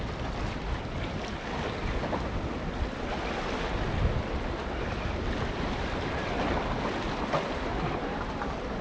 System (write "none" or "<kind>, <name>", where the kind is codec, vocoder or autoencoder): none